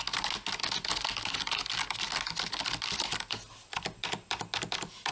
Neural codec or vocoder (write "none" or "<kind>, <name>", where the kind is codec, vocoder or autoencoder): none